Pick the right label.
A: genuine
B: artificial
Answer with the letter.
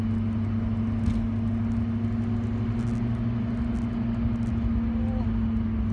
A